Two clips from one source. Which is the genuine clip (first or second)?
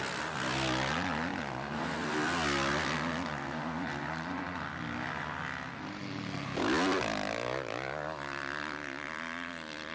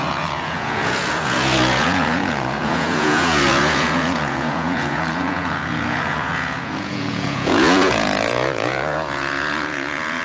first